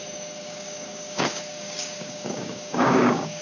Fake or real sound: fake